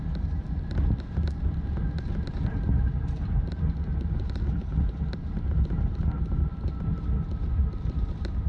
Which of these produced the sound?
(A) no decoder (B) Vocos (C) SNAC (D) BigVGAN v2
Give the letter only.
A